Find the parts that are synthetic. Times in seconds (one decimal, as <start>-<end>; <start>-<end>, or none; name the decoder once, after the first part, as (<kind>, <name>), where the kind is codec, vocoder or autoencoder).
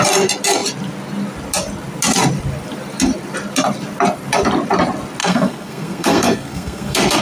5.2-7.2 (codec, SNAC)